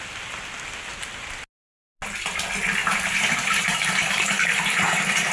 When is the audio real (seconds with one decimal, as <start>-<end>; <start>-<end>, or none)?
0.0-2.9